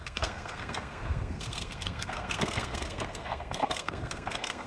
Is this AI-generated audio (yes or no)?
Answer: yes